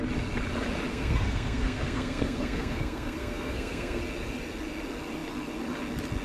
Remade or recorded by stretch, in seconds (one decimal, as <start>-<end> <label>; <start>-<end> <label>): 0.0-0.9 recorded; 0.9-4.0 remade; 4.0-6.2 recorded